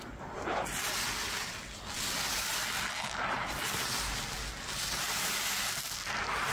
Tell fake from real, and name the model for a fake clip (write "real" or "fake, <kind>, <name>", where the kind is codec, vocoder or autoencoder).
real